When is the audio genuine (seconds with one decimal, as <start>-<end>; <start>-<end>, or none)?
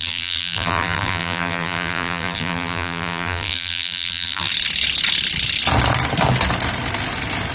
4.5-7.5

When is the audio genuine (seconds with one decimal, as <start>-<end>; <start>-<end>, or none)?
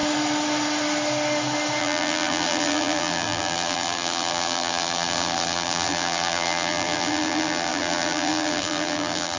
0.0-1.8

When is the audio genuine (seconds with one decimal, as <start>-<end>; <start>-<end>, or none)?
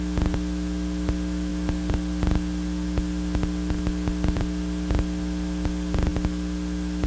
0.0-7.1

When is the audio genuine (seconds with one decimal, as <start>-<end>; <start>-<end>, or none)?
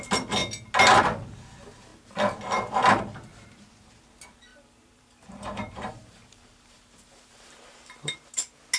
0.0-4.5; 8.3-8.8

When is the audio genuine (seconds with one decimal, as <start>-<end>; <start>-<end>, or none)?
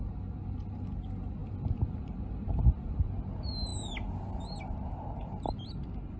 0.0-1.4; 3.0-6.2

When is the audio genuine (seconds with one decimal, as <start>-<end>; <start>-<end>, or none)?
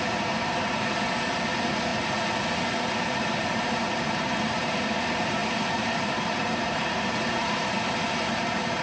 1.9-3.0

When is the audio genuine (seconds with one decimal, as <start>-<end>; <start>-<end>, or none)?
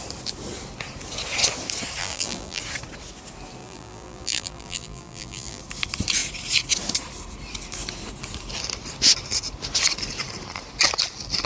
0.0-2.0; 2.6-3.6; 5.6-11.5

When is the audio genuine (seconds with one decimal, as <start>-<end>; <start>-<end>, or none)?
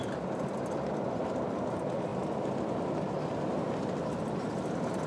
0.0-5.1